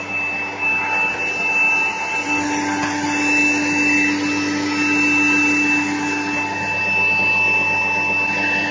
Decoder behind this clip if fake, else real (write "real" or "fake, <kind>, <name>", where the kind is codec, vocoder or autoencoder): real